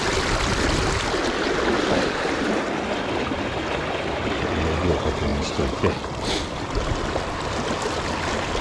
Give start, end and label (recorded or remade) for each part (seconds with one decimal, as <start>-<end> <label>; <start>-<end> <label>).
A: 0.0-8.6 recorded